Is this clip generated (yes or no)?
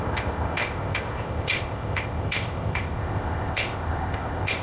yes